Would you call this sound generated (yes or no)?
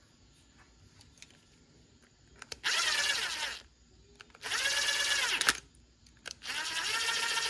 yes